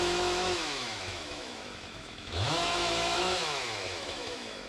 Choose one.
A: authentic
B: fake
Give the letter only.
B